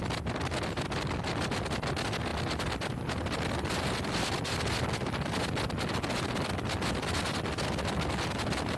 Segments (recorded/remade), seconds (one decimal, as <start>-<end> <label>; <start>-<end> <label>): 0.0-8.8 recorded